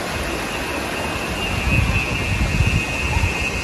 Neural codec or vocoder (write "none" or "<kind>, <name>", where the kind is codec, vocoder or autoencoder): none